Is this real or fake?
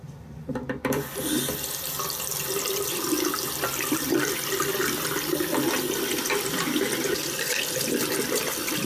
fake